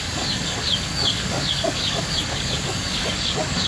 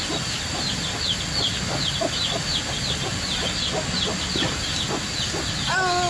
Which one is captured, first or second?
second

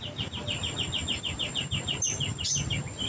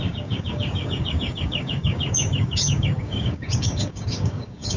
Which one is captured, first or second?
first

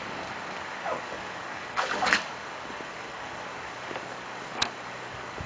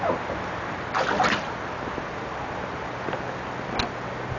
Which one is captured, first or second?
second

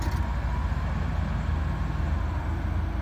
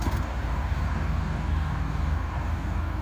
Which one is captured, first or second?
first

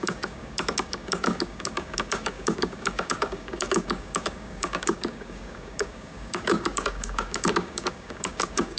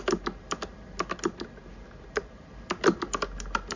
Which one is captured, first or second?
second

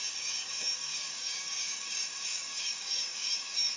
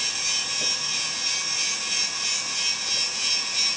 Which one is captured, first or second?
second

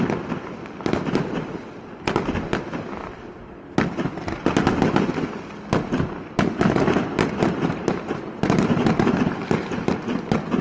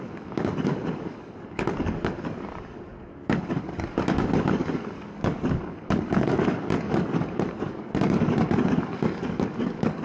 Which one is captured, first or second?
first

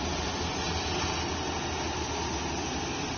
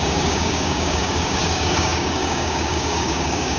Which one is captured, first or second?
first